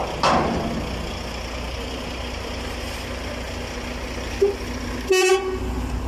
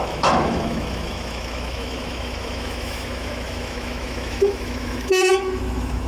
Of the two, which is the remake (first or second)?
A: second